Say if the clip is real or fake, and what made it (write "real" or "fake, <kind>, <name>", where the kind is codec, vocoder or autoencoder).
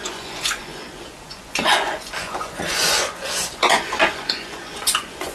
fake, vocoder, Vocos